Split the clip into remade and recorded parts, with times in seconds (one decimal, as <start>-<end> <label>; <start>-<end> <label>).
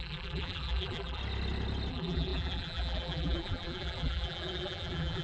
0.0-1.2 remade; 1.2-1.9 recorded; 1.9-5.2 remade